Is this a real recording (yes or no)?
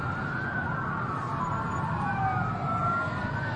yes